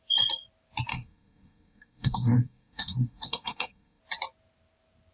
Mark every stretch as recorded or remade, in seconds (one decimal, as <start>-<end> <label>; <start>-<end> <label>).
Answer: 0.0-0.9 recorded; 0.9-4.0 remade; 4.0-5.1 recorded